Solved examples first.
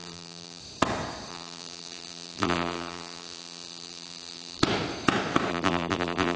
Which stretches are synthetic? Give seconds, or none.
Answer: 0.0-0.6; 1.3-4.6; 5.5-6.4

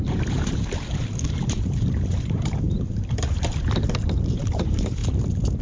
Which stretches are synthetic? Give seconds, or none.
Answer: 0.0-3.6; 4.3-5.0

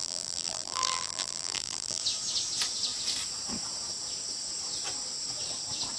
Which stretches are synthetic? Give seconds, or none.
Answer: 0.0-2.0

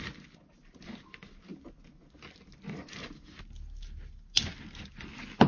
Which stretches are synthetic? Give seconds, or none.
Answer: none

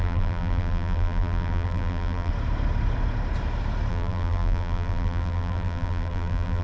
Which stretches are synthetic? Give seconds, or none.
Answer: 0.0-2.3; 3.9-6.6

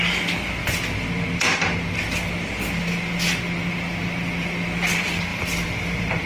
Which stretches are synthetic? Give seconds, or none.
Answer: 5.3-6.3